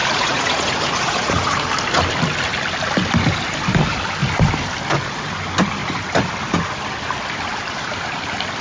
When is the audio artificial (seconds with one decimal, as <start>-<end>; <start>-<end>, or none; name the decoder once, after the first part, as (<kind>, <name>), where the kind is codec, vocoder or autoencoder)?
0.0-1.7 (vocoder, Vocos)